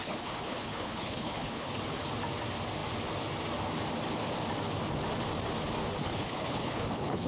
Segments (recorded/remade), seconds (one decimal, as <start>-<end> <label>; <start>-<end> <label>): 0.0-1.8 remade; 1.8-6.0 recorded; 6.0-7.3 remade